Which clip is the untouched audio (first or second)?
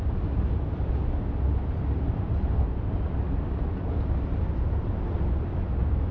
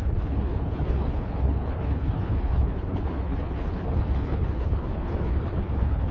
first